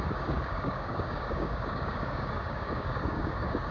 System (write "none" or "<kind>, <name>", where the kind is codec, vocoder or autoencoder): codec, DAC